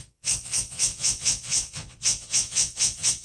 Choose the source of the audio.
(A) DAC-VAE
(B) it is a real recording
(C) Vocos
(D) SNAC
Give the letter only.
C